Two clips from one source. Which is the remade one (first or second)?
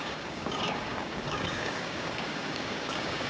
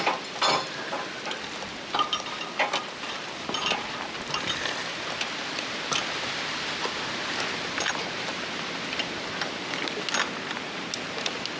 first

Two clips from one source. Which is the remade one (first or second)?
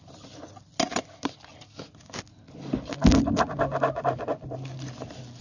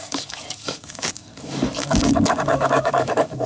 second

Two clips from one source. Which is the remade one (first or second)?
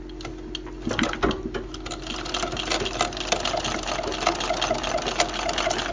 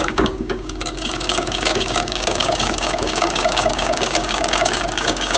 second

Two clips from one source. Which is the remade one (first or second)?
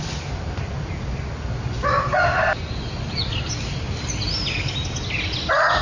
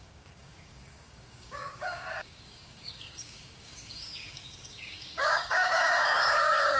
second